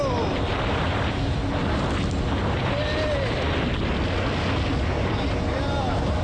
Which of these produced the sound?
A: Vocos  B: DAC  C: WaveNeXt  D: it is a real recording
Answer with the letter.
D